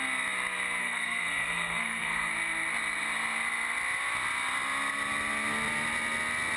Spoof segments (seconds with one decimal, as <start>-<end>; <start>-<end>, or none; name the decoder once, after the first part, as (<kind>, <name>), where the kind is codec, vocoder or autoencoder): 0.8-2.3 (codec, SNAC)